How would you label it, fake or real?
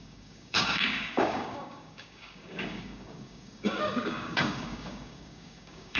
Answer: fake